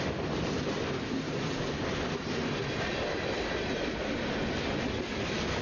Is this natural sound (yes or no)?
yes